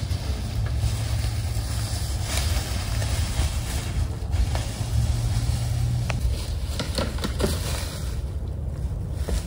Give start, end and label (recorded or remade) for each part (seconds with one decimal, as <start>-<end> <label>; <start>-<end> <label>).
0.0-3.0 recorded; 3.0-3.8 remade; 3.8-9.5 recorded